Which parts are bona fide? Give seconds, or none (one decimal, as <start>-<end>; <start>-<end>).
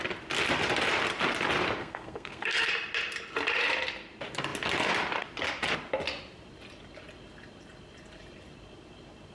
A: 0.0-1.8; 2.7-9.3